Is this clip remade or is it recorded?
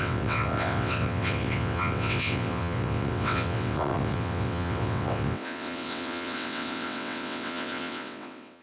remade